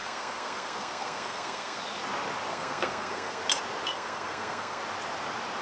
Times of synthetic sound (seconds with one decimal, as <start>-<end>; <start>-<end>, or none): 0.0-1.8; 2.5-3.4; 3.9-4.8